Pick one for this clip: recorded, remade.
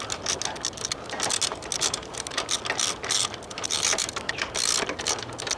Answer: recorded